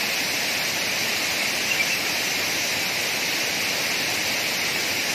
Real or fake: real